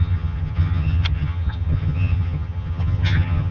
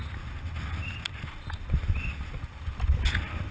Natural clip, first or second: second